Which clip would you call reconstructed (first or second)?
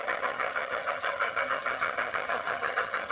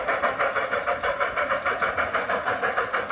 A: first